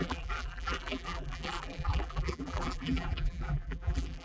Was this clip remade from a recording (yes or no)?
yes